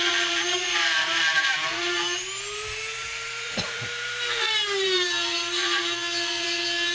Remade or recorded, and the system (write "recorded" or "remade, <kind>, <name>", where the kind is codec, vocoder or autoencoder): remade, vocoder, BigVGAN v2